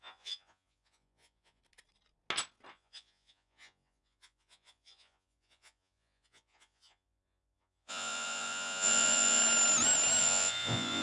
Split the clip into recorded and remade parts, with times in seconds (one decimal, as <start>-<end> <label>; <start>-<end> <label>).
0.0-1.6 remade; 1.6-2.7 recorded; 2.7-9.4 remade; 9.4-10.2 recorded; 10.2-11.0 remade